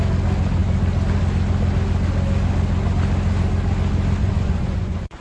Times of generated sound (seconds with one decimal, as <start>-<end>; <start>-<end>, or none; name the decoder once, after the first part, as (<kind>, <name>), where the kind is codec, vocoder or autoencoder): 4.2-5.2 (vocoder, Vocos)